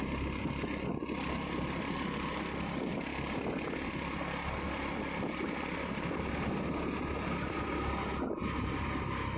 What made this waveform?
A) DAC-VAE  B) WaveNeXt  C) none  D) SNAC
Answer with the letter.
C